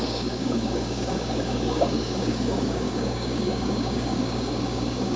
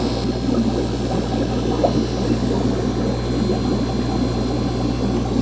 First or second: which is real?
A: second